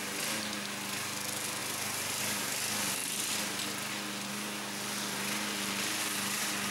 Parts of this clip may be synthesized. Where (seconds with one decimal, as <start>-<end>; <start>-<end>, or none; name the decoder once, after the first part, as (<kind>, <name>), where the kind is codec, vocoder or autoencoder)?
none